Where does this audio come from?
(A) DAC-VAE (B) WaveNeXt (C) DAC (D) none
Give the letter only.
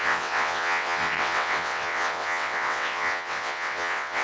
B